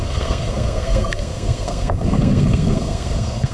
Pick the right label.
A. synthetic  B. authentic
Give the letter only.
A